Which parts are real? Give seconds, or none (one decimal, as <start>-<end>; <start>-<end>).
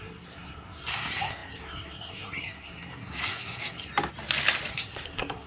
3.9-4.7